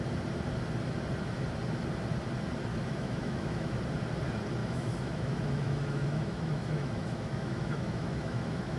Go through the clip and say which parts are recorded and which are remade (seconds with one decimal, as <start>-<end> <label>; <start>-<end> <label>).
0.0-2.7 recorded; 2.7-3.8 remade; 3.8-4.6 recorded; 4.6-8.8 remade